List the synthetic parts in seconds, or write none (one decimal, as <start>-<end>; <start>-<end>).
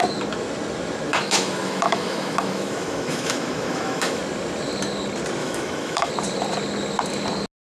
1.1-4.2; 5.4-6.1